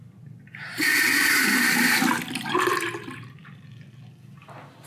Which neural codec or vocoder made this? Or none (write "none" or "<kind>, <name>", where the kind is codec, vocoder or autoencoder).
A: none